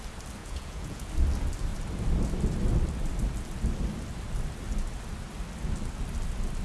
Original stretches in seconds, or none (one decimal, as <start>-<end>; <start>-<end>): 0.0-0.4; 1.1-6.6